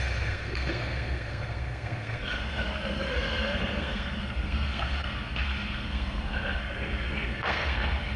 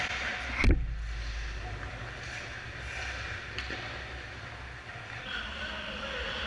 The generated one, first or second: first